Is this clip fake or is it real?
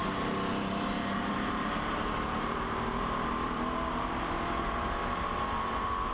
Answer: fake